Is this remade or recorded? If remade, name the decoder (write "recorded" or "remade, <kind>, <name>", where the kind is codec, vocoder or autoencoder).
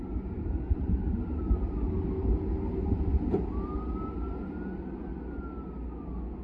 recorded